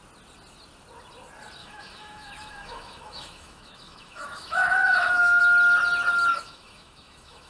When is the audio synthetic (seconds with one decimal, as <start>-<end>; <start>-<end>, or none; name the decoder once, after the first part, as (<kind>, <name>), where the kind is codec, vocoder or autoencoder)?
1.6-5.4 (autoencoder, DAC-VAE); 6.3-7.5